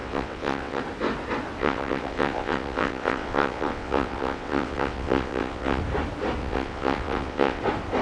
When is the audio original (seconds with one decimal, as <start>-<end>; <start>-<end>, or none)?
0.8-1.6; 5.8-6.4; 7.6-8.0